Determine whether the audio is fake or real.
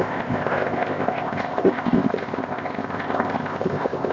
fake